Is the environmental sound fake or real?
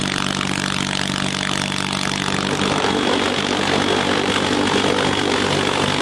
real